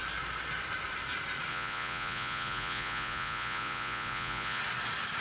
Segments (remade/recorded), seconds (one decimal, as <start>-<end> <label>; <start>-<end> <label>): 0.0-1.5 recorded; 1.5-4.6 remade; 4.6-5.2 recorded